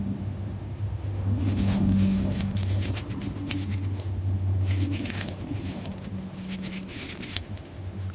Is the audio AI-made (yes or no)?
yes